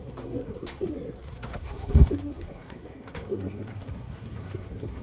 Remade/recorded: remade